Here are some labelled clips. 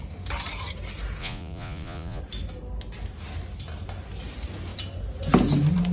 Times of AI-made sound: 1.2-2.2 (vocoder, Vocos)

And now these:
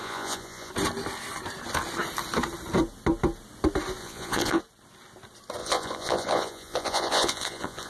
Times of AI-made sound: 0.0-0.7 (vocoder, Vocos); 4.0-4.6; 5.6-7.9